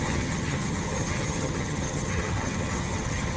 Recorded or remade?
remade